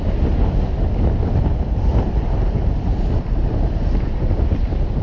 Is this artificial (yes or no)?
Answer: no